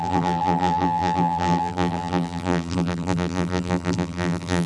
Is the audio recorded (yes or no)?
no